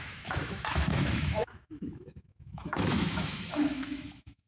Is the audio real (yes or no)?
no